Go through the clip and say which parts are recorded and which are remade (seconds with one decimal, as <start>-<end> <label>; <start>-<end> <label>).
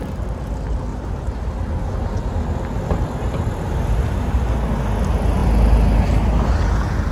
0.0-0.9 recorded; 0.9-1.5 remade; 1.5-7.1 recorded